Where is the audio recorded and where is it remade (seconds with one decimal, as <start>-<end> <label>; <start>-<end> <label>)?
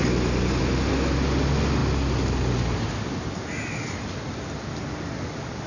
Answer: 0.0-5.7 recorded